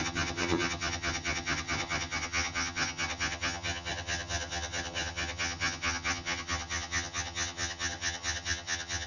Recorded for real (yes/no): no